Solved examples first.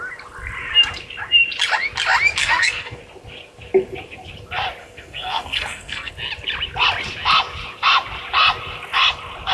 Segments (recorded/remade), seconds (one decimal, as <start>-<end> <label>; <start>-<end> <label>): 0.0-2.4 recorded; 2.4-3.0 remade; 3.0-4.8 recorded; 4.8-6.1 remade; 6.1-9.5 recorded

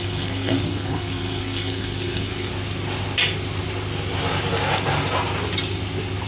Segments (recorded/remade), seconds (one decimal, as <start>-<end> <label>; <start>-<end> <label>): 0.0-2.5 remade; 2.5-6.3 recorded

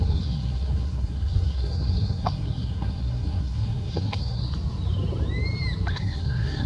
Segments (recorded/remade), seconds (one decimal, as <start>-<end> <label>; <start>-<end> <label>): 0.0-4.4 remade; 4.4-5.9 recorded; 5.9-6.7 remade

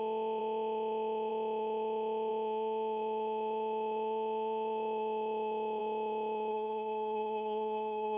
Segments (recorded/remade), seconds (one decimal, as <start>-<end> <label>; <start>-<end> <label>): 0.0-6.5 recorded; 6.5-8.2 remade

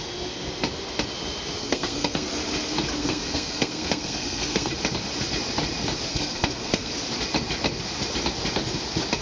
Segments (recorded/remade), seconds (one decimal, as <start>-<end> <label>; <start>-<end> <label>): 0.0-1.6 recorded; 1.6-2.3 remade; 2.3-3.0 recorded; 3.0-4.7 remade; 4.7-6.1 recorded; 6.1-6.9 remade; 6.9-9.2 recorded

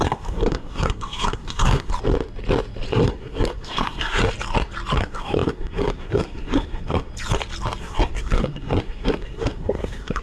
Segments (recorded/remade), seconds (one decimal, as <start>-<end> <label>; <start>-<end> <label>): 0.0-1.9 remade; 1.9-2.9 recorded; 2.9-4.2 remade; 4.2-5.0 recorded; 5.0-7.1 remade; 7.1-7.8 recorded; 7.8-10.2 remade

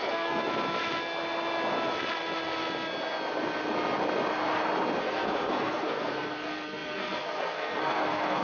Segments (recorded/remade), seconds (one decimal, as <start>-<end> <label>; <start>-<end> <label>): 0.0-0.4 remade; 0.4-5.0 recorded; 5.0-8.4 remade